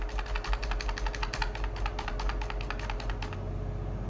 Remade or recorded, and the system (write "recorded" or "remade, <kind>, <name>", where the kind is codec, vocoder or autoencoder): recorded